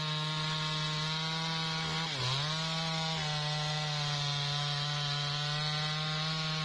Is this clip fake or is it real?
real